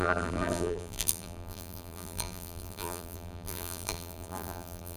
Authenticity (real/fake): fake